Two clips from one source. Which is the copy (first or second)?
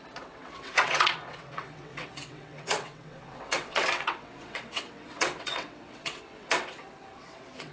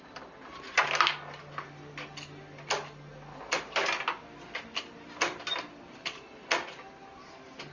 first